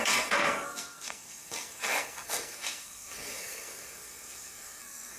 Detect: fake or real fake